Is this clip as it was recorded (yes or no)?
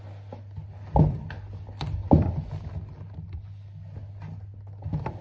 yes